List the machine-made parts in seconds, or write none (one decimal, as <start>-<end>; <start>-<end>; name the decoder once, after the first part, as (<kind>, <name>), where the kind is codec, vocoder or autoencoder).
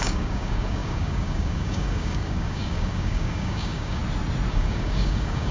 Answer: 0.0-4.0 (codec, DAC); 4.5-5.5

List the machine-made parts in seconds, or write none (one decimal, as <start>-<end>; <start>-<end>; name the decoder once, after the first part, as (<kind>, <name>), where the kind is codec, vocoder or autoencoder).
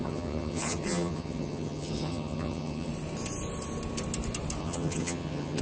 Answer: 0.0-2.9 (vocoder, HiFi-GAN); 4.6-5.6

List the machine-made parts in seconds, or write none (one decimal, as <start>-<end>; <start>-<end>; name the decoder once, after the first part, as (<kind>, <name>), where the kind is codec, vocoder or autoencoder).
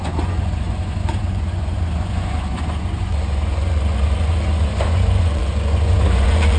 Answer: 0.0-6.6 (vocoder, Vocos)